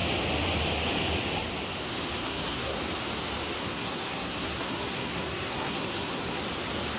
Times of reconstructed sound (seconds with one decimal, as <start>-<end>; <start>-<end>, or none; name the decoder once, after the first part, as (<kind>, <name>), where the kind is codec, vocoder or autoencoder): 2.2-2.8 (codec, SNAC); 3.6-6.4